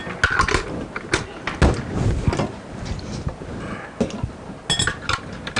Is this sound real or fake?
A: real